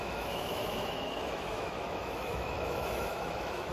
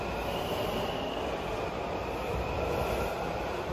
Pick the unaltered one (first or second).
second